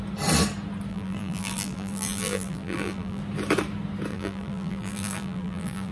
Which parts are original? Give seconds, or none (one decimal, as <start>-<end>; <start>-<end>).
0.0-0.9; 3.2-4.1